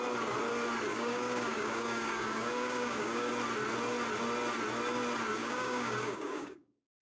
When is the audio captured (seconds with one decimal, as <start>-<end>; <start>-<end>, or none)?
0.0-0.9; 3.3-5.4